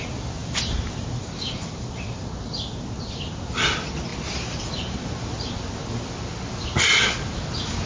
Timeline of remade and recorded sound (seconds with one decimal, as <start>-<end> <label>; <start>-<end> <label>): 0.0-0.4 recorded; 0.4-1.3 remade; 1.3-4.1 recorded; 4.1-5.4 remade; 5.4-7.9 recorded